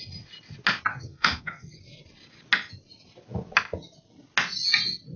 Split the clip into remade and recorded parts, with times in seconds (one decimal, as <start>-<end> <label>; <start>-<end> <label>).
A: 0.0-0.9 recorded; 0.9-1.8 remade; 1.8-5.2 recorded